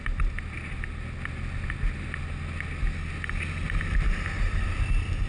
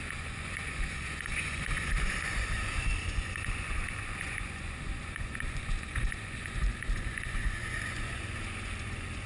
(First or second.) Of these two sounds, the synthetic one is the second